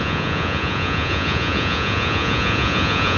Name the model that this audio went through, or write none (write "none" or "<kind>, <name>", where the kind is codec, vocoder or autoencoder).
vocoder, Vocos